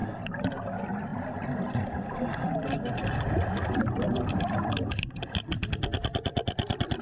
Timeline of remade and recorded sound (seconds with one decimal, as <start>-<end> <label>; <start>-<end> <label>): 0.0-0.5 remade; 0.5-1.1 recorded; 1.1-5.1 remade; 5.1-7.0 recorded